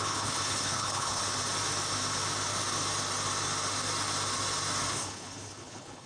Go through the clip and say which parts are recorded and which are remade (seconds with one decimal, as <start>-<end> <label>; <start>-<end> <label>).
0.0-1.2 remade; 1.2-4.9 recorded; 4.9-6.1 remade